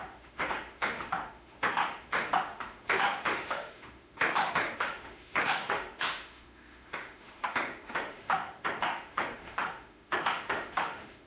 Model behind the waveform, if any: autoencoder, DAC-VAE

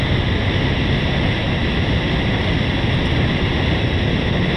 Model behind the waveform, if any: none